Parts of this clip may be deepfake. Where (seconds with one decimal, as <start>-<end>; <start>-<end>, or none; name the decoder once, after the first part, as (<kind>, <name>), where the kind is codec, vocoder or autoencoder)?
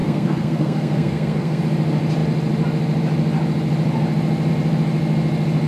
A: 0.0-1.6 (codec, SNAC)